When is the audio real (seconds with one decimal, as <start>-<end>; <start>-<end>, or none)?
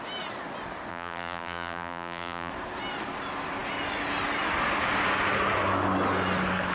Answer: 0.0-0.9; 2.5-6.7